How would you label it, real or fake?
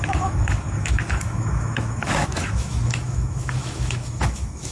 fake